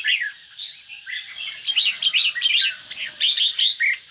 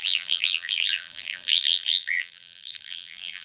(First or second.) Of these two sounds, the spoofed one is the second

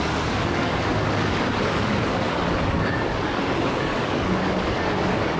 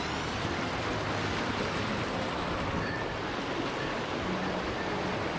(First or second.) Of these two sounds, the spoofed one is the first